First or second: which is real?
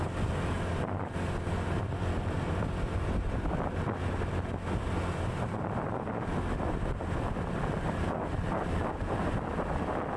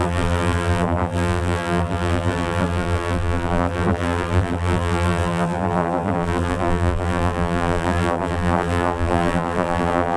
first